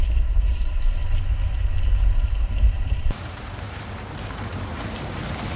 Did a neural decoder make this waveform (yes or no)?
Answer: yes